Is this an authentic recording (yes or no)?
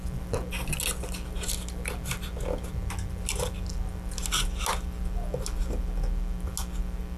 yes